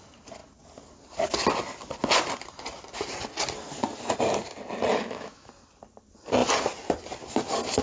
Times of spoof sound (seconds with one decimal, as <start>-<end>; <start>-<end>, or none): 4.9-5.5